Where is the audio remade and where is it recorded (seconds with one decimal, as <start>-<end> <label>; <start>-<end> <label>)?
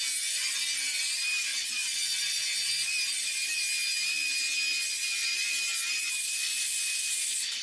0.0-0.4 remade; 0.4-1.0 recorded; 1.0-1.5 remade; 1.5-6.1 recorded; 6.1-7.6 remade